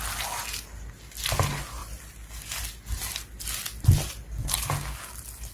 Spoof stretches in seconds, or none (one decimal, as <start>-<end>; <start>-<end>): 1.8-5.1